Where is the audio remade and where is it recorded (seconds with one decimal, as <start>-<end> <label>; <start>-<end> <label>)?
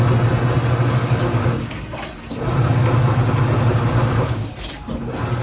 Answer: 0.0-1.0 recorded; 1.0-1.8 remade; 1.8-3.9 recorded; 3.9-4.5 remade; 4.5-5.4 recorded